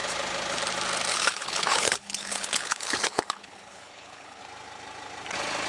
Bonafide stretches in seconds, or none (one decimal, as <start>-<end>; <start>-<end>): 0.0-1.1; 4.4-5.7